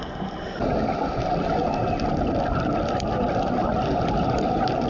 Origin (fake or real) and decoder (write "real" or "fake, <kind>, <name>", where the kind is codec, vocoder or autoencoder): real